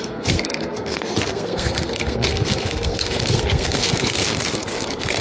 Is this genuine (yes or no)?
no